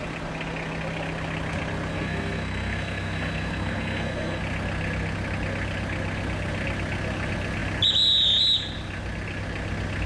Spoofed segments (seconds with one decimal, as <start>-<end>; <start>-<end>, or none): 1.9-4.4

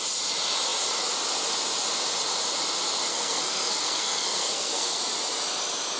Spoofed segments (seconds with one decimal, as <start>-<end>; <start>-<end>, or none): 3.1-5.0